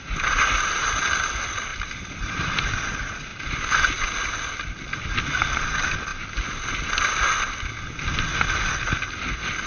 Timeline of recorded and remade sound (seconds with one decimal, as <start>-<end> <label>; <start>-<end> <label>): 0.0-1.7 recorded; 1.7-2.8 remade; 2.8-3.3 recorded; 3.3-4.0 remade; 4.0-9.7 recorded